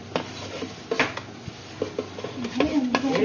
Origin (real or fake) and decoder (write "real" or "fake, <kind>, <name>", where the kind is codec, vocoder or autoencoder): real